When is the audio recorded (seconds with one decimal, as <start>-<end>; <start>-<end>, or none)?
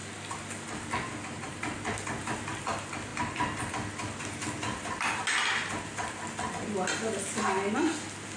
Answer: 0.0-4.7; 5.2-8.4